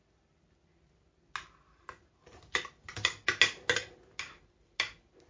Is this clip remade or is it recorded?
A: recorded